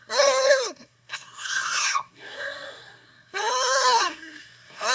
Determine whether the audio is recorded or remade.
remade